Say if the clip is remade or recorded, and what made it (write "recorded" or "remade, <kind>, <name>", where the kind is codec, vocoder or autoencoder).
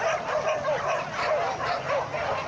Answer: recorded